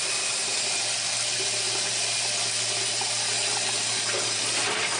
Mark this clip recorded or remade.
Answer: recorded